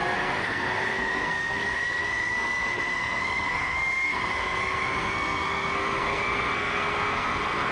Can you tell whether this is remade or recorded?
remade